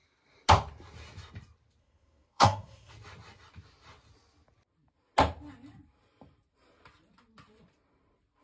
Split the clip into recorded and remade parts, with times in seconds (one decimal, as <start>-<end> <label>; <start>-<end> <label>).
0.0-1.8 recorded; 1.8-2.9 remade; 2.9-8.4 recorded